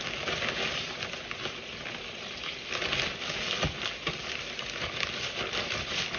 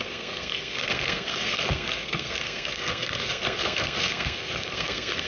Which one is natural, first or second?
first